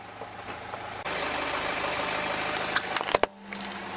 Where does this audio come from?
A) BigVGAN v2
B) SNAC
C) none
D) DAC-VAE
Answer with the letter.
C